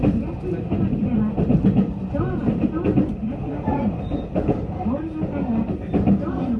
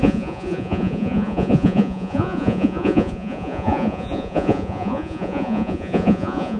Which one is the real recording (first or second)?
first